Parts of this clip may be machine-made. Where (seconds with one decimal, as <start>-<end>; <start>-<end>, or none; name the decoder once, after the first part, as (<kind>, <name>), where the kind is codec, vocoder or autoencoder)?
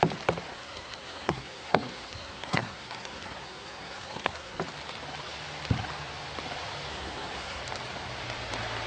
0.5-4.6 (codec, SNAC); 6.9-7.6